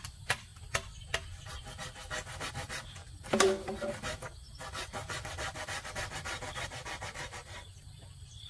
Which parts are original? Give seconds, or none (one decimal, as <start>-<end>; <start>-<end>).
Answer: 0.5-2.5